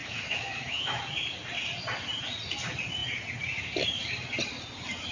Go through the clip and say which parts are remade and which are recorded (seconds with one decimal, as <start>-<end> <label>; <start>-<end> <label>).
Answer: 0.0-1.0 remade; 1.0-5.1 recorded